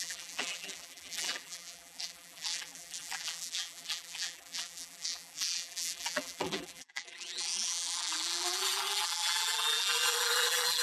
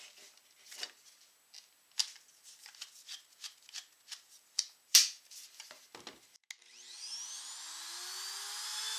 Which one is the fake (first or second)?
first